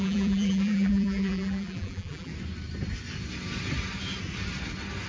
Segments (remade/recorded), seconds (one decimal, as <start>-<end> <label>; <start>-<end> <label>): 0.0-2.3 remade; 2.3-5.1 recorded